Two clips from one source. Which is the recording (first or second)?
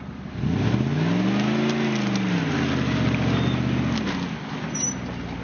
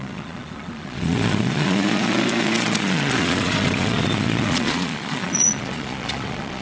first